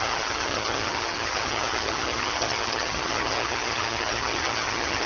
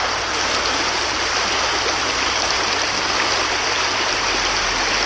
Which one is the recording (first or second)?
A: second